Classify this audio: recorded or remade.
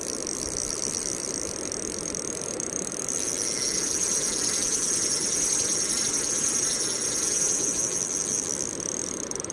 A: remade